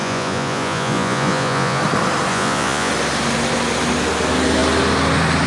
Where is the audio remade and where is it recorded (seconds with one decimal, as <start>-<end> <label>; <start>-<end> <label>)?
0.0-1.8 remade; 1.8-2.3 recorded; 2.3-2.9 remade; 2.9-5.5 recorded